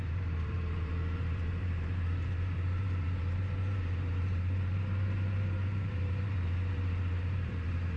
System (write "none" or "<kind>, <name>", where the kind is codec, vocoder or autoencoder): vocoder, BigVGAN v2